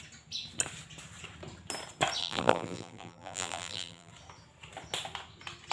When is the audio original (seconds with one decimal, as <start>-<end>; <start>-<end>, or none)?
0.0-2.2; 4.1-5.7